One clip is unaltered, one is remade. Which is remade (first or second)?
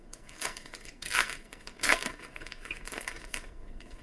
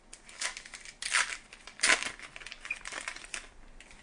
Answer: first